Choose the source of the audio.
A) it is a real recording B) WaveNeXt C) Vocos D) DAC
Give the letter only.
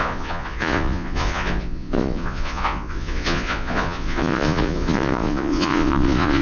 C